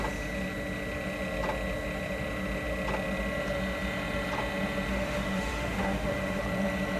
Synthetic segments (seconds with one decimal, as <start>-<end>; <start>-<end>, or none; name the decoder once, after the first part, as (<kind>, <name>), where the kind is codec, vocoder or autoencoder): 4.9-6.4 (autoencoder, DAC-VAE)